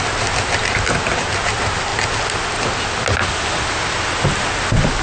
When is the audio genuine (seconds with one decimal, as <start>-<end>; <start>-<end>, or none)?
0.0-5.0